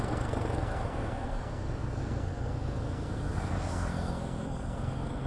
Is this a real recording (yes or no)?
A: no